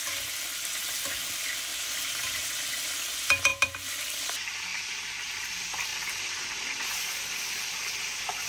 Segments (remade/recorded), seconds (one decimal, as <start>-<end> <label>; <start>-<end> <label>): 0.0-1.7 recorded; 1.7-2.5 remade; 2.5-3.5 recorded; 3.5-4.2 remade; 4.2-4.7 recorded; 4.7-5.4 remade; 5.4-5.9 recorded; 5.9-6.5 remade; 6.5-8.5 recorded